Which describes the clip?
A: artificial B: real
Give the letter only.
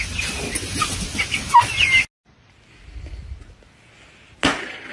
B